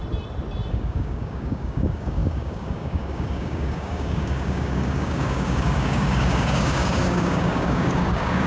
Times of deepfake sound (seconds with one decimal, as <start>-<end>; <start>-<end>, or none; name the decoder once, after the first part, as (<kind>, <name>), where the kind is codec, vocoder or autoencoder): 0.7-8.5 (codec, DAC)